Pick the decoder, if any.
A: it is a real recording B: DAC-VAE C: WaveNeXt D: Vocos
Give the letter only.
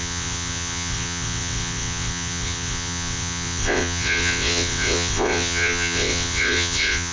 C